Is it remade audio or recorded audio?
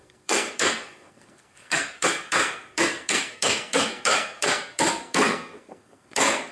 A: remade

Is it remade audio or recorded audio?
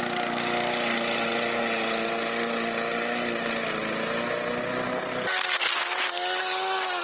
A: recorded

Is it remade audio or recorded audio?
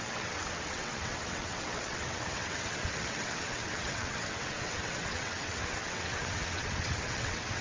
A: remade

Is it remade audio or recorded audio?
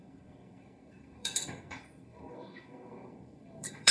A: remade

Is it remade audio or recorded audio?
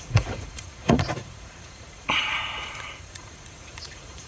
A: remade